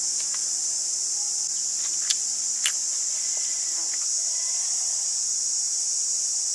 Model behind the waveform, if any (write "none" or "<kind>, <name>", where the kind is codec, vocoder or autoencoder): none